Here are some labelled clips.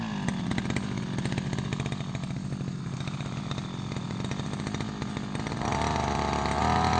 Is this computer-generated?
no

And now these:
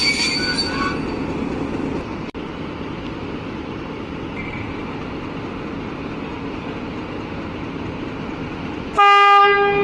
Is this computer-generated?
no